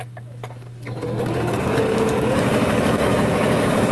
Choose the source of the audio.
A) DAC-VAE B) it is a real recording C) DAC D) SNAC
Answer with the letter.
C